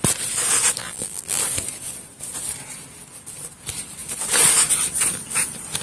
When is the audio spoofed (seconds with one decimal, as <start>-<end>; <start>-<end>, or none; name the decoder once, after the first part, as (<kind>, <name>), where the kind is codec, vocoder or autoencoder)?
0.8-1.4 (vocoder, BigVGAN v2)